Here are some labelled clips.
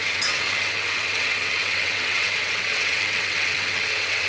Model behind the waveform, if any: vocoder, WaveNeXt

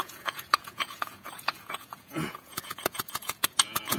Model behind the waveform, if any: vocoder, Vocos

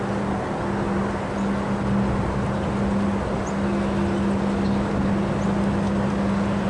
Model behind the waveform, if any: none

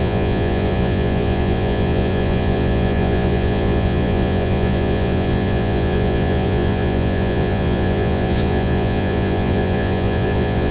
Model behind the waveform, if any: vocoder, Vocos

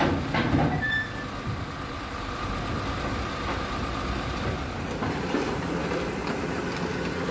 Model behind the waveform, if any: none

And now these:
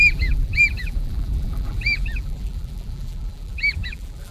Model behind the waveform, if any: vocoder, BigVGAN v2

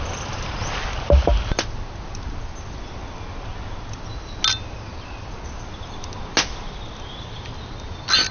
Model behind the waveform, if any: none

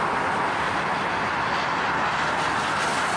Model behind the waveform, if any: none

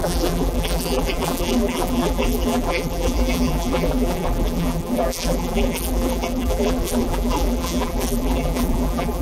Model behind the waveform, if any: vocoder, BigVGAN v2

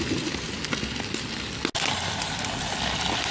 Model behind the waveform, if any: none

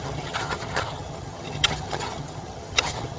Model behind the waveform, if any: vocoder, HiFi-GAN